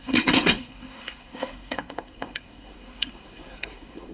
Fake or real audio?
fake